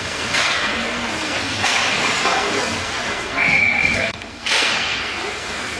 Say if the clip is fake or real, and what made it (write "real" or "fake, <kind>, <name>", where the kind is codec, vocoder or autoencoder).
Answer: fake, codec, SNAC